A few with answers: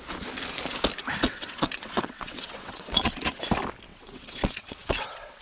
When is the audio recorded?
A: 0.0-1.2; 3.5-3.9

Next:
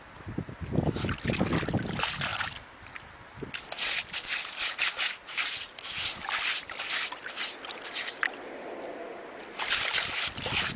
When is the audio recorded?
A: 0.0-10.8

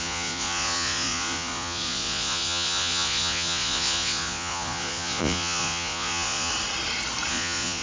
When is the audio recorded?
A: 6.5-7.3

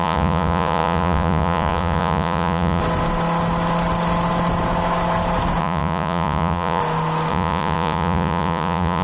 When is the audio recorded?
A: 2.8-5.6; 6.8-7.3

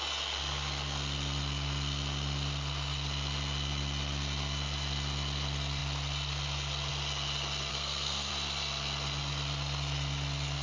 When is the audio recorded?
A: 0.0-7.7; 8.3-10.6

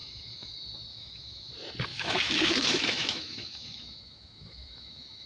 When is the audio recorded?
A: 0.5-0.9; 1.5-1.9

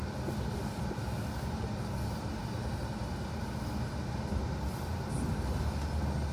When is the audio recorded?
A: 0.0-6.3

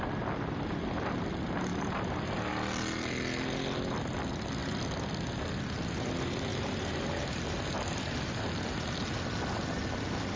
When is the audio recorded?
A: 0.0-1.7; 2.4-6.5; 7.4-10.4